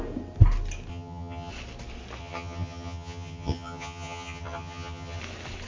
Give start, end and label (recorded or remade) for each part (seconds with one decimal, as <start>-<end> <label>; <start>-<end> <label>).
0.0-0.9 recorded; 0.9-1.5 remade; 1.5-2.2 recorded; 2.2-5.2 remade; 5.2-5.7 recorded